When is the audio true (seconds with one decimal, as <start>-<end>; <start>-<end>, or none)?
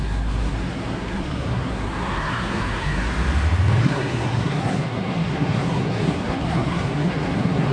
3.1-3.8